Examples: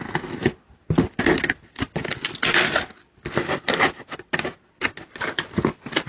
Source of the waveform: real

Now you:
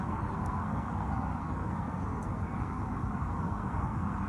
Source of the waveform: fake